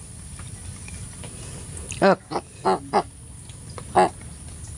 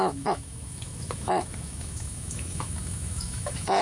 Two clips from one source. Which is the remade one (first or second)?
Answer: second